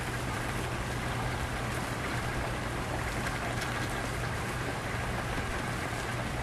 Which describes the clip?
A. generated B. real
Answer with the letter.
A